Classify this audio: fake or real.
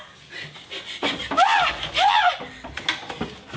real